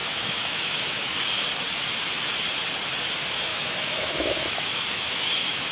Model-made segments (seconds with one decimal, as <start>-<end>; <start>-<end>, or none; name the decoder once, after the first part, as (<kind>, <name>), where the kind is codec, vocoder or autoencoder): 0.0-1.2 (autoencoder, DAC-VAE); 3.5-5.7